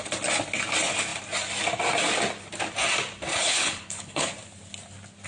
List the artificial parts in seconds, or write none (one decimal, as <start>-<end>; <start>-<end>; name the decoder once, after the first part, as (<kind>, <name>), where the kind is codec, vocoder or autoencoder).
3.3-4.3 (codec, HILCodec)

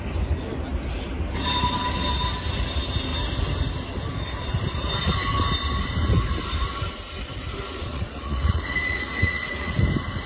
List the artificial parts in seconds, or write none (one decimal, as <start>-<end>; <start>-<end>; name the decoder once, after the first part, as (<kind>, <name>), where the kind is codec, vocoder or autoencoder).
7.8-9.8 (vocoder, Vocos)

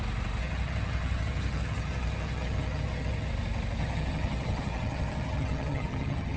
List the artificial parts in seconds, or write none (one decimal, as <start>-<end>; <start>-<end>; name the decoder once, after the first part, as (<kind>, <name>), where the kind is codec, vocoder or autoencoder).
0.4-3.3 (vocoder, HiFi-GAN); 3.8-6.4

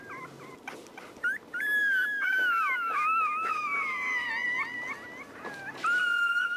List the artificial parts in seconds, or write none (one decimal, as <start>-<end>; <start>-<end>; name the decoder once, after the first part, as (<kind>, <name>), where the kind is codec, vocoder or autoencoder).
1.8-4.3 (autoencoder, DAC-VAE); 6.0-6.6